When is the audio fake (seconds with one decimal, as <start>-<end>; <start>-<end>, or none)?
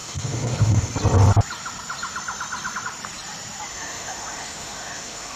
0.0-0.9; 3.7-5.4